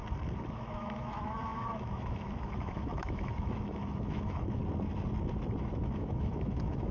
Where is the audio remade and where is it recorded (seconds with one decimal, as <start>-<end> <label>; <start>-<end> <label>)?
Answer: 0.0-0.5 recorded; 0.5-4.6 remade; 4.6-5.6 recorded; 5.6-6.9 remade